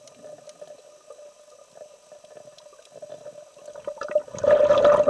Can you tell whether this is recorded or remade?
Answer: recorded